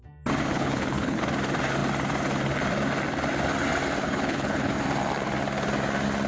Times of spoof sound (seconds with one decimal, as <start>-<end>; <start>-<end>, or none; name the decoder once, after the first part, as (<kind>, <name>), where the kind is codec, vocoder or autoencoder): 0.5-1.2 (codec, HILCodec); 4.0-4.7